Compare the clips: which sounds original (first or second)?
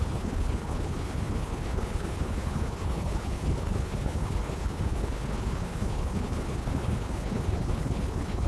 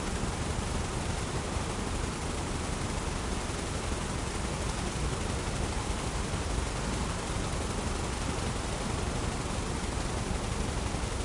second